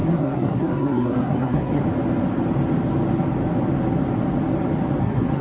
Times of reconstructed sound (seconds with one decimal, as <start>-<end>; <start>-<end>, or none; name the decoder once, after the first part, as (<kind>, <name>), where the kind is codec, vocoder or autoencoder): 0.0-1.8 (codec, SNAC); 5.0-5.4